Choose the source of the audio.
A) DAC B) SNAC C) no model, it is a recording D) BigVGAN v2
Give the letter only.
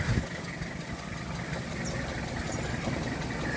C